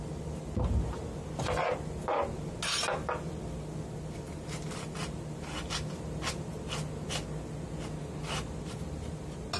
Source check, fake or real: real